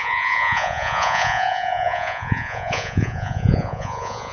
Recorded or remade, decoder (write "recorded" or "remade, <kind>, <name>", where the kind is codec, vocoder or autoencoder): remade, vocoder, Vocos